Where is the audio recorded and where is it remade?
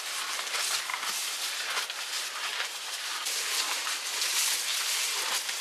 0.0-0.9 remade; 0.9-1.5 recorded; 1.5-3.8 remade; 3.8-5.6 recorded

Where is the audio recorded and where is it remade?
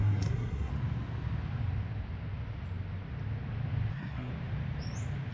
0.0-0.7 remade; 0.7-3.9 recorded; 3.9-4.3 remade; 4.3-5.3 recorded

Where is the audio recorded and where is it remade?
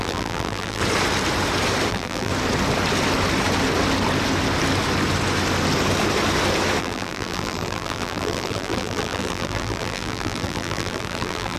0.0-0.8 remade; 0.8-1.9 recorded; 1.9-2.3 remade; 2.3-6.8 recorded; 6.8-11.6 remade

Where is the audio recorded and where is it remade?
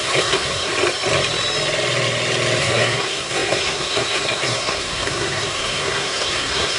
0.0-0.7 remade; 0.7-2.6 recorded; 2.6-6.8 remade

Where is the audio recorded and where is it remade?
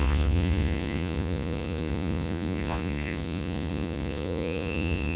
0.0-5.2 remade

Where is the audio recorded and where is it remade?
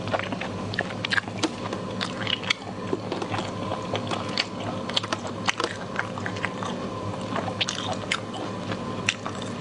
0.0-9.6 recorded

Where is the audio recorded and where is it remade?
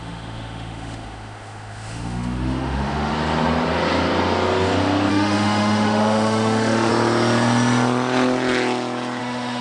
0.0-3.1 remade; 3.1-5.1 recorded; 5.1-6.9 remade; 6.9-9.2 recorded; 9.2-9.6 remade